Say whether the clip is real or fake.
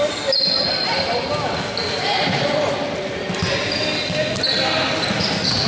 real